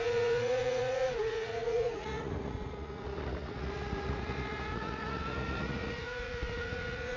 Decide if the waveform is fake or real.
fake